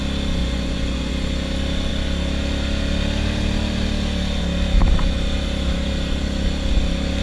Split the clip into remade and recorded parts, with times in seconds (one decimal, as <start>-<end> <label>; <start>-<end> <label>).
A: 0.0-0.4 recorded; 0.4-1.1 remade; 1.1-7.2 recorded